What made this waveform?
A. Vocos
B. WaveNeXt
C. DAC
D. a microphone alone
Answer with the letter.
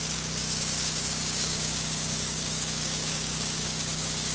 C